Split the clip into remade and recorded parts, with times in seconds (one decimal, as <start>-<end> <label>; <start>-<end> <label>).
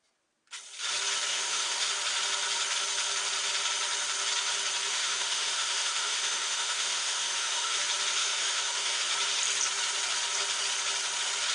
0.0-1.3 recorded; 1.3-1.9 remade; 1.9-4.9 recorded; 4.9-7.8 remade; 7.8-8.2 recorded; 8.2-9.0 remade; 9.0-11.5 recorded